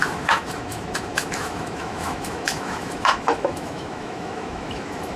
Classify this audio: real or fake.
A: fake